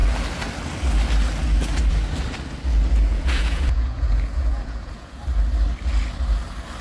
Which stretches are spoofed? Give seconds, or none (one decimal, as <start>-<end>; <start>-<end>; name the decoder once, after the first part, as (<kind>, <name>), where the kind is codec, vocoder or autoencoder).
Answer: 3.1-5.2 (vocoder, Vocos)